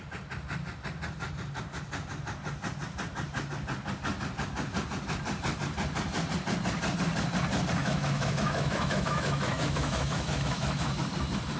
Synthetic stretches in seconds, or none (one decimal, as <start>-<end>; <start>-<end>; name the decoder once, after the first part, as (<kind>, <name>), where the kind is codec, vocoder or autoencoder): 7.8-11.0 (autoencoder, DAC-VAE)

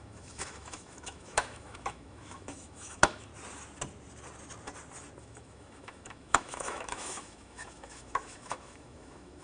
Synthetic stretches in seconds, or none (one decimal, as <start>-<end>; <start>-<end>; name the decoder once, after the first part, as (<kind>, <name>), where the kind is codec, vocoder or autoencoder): 0.0-3.3 (autoencoder, DAC-VAE); 5.2-9.4